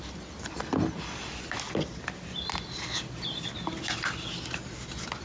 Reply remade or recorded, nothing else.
recorded